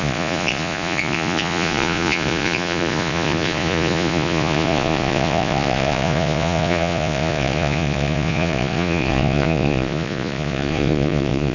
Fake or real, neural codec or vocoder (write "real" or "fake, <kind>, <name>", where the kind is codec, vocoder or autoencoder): fake, vocoder, Vocos